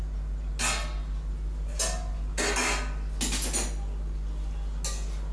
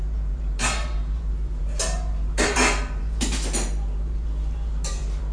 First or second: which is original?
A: first